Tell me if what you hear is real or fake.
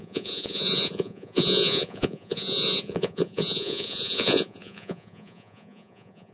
fake